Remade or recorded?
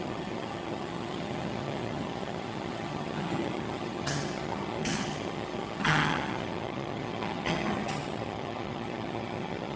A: remade